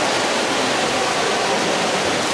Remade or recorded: recorded